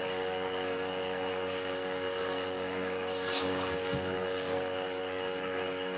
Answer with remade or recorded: remade